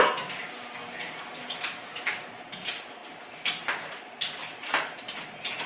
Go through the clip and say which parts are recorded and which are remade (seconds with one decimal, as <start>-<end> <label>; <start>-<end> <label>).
0.0-5.7 recorded